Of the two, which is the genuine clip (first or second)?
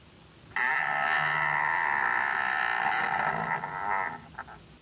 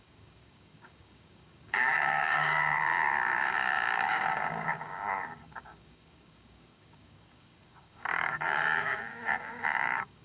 first